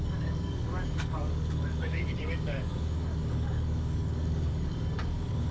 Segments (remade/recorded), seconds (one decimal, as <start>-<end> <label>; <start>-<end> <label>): 0.0-5.5 remade